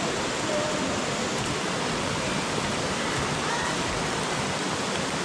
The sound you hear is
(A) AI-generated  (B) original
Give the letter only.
B